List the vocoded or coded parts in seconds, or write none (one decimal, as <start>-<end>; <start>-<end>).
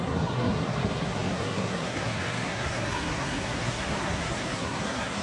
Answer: 0.0-5.2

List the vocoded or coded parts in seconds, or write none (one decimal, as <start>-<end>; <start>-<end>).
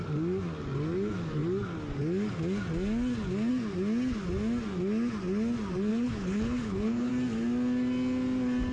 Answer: 5.9-7.1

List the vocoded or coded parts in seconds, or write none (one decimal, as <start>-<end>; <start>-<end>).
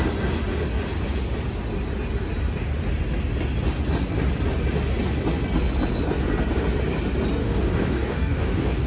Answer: 7.4-8.9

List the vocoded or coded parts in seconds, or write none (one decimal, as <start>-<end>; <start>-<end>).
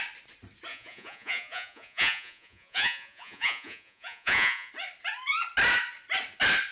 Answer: 0.7-4.7